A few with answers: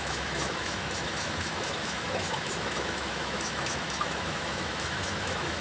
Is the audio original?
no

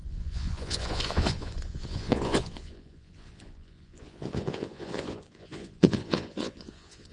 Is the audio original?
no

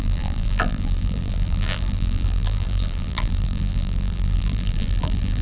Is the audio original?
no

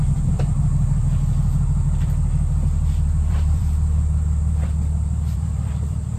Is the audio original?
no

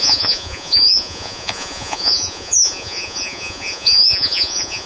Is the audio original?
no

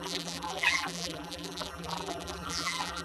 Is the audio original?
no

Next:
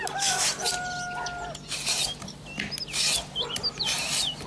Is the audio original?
yes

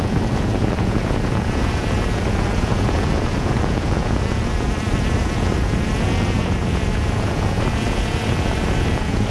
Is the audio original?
no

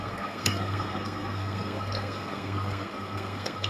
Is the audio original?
no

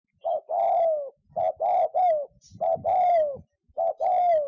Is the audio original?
yes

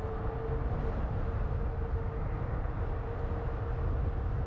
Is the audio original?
yes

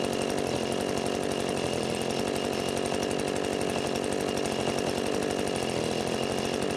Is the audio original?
yes